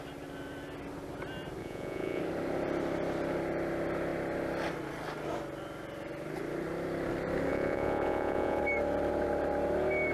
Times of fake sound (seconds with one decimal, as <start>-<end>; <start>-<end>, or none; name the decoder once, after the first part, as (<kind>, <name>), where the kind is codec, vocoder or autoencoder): 1.6-2.2 (vocoder, Vocos); 7.5-8.6